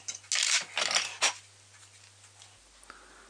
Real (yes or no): yes